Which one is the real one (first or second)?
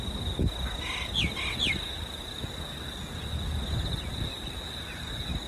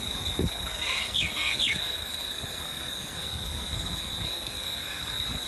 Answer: first